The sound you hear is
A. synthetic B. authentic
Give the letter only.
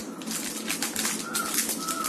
B